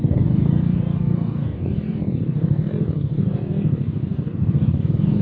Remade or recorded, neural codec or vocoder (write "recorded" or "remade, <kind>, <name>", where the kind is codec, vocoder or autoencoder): remade, codec, DAC